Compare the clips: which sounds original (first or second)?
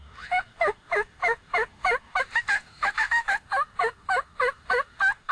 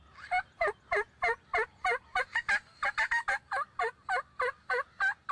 second